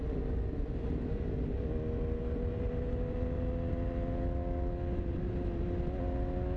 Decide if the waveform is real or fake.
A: real